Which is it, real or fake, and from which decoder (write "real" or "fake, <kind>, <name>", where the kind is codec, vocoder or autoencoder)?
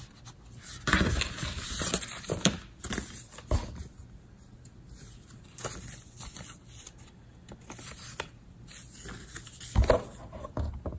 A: real